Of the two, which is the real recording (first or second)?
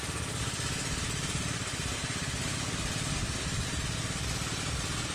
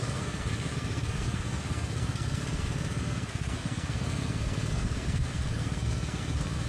first